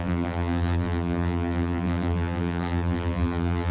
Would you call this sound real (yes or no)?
no